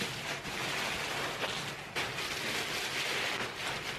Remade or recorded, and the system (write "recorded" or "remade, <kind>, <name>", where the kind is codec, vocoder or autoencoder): recorded